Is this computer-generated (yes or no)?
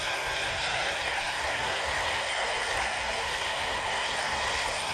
yes